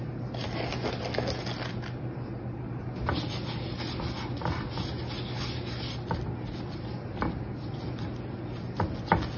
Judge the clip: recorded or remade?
recorded